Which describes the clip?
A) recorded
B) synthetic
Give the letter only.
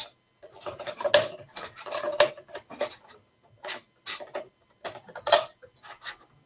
A